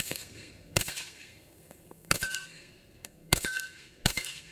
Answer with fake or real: fake